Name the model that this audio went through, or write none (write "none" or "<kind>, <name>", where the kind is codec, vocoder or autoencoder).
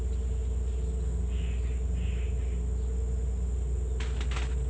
none